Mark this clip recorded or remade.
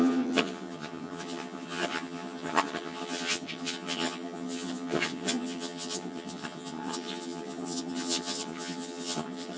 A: remade